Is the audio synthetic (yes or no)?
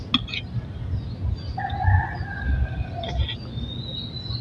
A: no